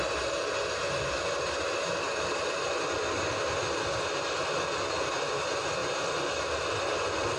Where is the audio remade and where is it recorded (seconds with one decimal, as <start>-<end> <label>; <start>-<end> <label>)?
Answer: 0.0-5.8 remade; 5.8-6.7 recorded; 6.7-7.4 remade